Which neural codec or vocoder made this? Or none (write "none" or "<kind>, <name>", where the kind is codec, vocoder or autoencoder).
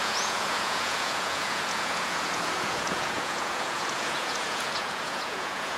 vocoder, Vocos